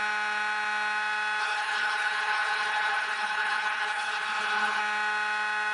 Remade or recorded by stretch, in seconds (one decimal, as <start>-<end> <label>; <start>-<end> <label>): 0.0-1.4 recorded; 1.4-4.8 remade; 4.8-5.7 recorded